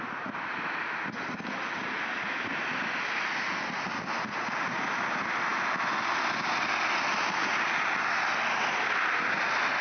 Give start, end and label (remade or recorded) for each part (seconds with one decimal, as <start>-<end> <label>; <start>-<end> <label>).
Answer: 0.0-9.8 recorded